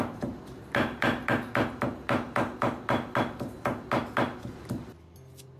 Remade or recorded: recorded